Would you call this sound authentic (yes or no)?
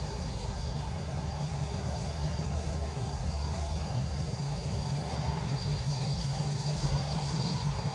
no